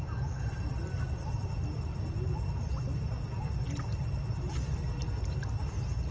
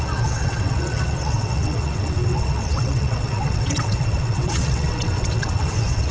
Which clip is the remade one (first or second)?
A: second